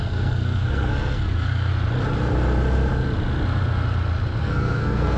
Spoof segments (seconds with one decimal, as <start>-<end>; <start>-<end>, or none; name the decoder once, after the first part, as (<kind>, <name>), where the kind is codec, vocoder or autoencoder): 0.0-1.7 (codec, SNAC); 4.4-5.2